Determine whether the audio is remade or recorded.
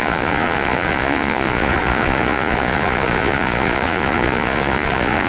remade